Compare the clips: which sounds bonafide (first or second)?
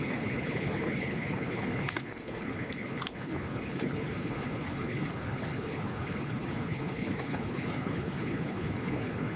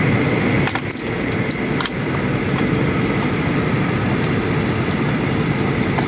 second